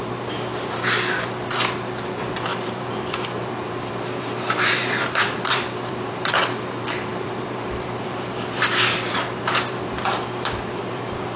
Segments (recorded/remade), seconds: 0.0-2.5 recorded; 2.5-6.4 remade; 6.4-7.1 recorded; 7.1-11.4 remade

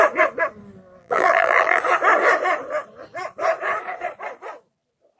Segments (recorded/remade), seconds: 0.0-1.0 recorded; 1.0-1.8 remade; 1.8-5.2 recorded

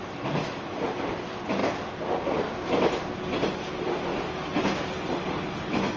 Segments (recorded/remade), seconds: 0.0-6.0 recorded